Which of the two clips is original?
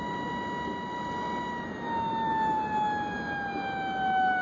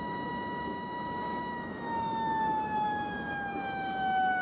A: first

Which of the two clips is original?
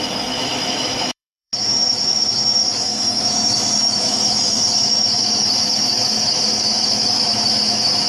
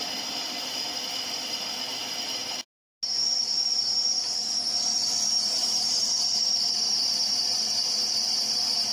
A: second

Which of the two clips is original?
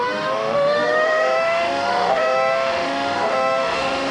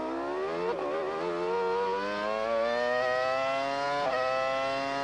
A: second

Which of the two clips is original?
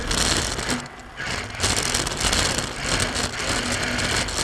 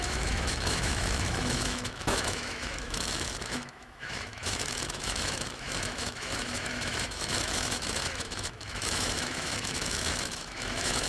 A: first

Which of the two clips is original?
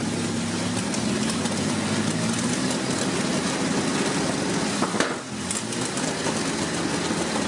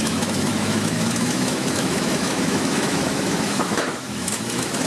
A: first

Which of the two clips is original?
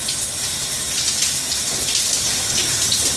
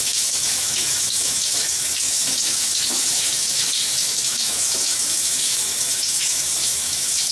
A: first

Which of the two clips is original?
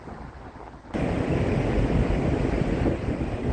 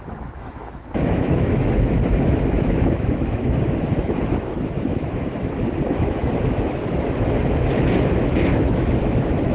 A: first